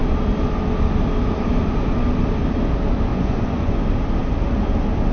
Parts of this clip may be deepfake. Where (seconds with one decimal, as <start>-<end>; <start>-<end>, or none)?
3.1-3.8